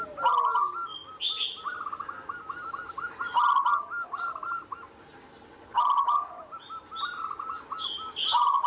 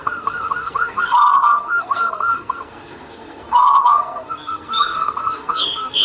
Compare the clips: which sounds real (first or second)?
first